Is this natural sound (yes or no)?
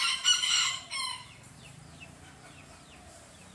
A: no